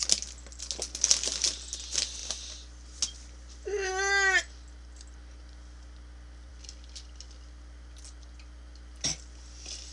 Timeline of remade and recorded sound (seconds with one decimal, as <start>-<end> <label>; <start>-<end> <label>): 0.0-9.9 recorded